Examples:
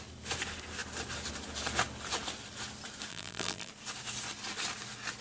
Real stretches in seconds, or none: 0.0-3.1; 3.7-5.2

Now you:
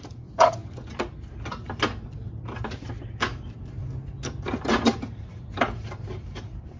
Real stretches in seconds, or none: 0.6-4.7

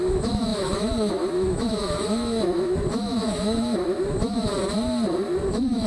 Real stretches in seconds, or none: 4.5-5.5

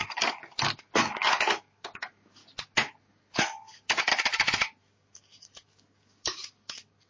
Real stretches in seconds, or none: 2.4-3.0; 4.1-4.8

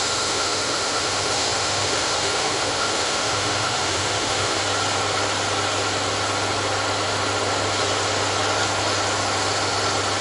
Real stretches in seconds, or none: 4.6-10.2

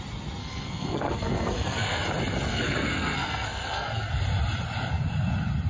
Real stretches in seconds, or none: 0.0-0.4; 2.0-2.5; 4.1-5.7

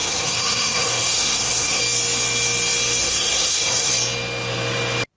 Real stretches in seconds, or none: 1.8-3.0; 3.9-5.2

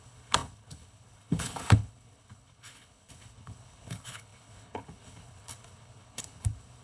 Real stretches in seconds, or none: none